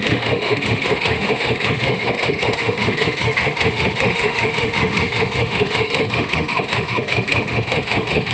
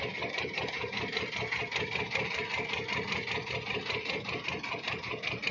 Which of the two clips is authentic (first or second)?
second